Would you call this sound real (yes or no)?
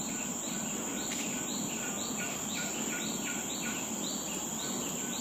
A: yes